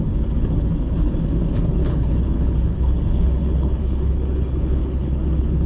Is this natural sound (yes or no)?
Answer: no